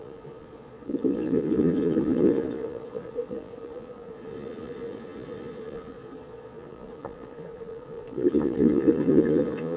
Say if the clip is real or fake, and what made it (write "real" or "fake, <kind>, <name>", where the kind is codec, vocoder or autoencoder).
fake, vocoder, Vocos